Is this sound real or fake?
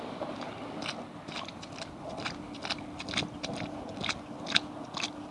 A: real